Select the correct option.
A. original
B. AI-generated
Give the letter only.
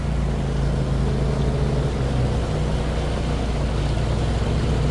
A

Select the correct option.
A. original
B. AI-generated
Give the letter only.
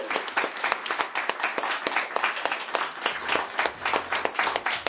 A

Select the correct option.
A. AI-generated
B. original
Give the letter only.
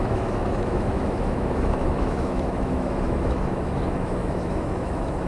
A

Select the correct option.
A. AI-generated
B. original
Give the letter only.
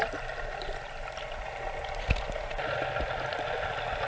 B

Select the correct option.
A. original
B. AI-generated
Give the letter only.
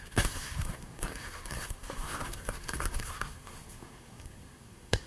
B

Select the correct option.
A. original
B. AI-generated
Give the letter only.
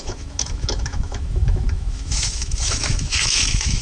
B